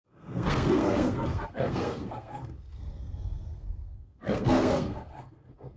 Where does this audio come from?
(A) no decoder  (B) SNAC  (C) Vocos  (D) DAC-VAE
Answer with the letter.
B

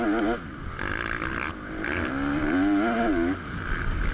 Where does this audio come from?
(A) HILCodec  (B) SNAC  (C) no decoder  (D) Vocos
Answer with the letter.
C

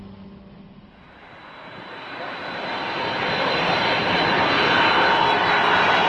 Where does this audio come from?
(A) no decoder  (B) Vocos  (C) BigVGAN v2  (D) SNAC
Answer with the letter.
A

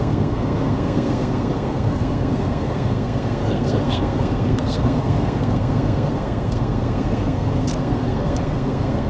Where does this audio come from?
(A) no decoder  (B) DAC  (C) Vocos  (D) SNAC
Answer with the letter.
D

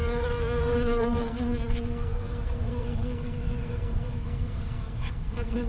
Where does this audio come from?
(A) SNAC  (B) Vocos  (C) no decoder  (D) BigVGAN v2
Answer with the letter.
A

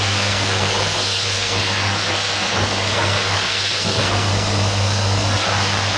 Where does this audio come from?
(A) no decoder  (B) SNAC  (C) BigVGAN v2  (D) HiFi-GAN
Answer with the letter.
B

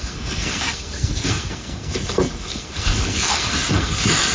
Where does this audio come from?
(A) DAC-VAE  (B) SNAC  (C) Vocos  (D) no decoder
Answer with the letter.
B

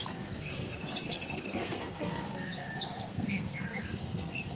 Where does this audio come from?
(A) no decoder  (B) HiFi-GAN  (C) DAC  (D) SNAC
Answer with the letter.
D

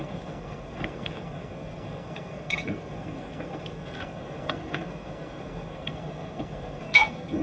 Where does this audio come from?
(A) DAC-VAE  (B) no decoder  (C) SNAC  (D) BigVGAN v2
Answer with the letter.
C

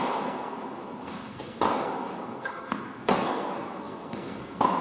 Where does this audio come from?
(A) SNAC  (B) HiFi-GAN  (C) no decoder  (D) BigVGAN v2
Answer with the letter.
A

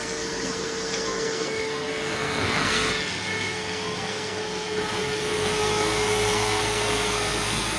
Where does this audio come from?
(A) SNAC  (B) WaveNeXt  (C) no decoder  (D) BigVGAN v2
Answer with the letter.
A